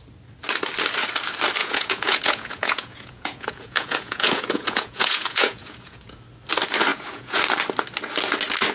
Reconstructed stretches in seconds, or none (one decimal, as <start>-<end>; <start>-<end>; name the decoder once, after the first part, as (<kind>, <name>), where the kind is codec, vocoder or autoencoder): 1.6-6.2 (vocoder, Vocos); 6.9-7.4